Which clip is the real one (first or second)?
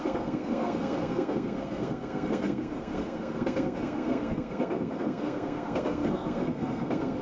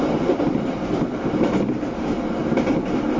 second